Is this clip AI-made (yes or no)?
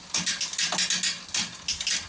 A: no